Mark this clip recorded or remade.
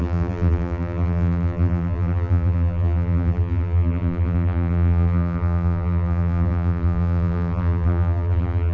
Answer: remade